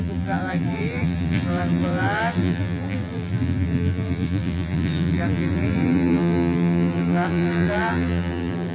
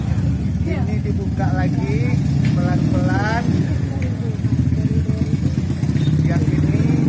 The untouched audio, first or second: second